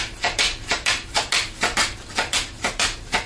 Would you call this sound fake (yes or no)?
yes